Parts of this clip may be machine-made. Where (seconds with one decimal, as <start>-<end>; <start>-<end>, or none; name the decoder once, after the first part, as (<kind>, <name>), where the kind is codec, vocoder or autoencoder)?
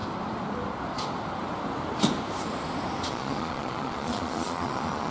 3.1-5.1 (vocoder, Vocos)